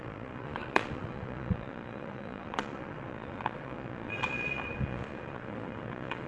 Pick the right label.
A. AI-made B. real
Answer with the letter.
A